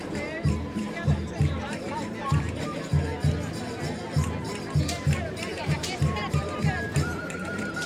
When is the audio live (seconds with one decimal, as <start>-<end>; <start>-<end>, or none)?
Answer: 2.9-5.3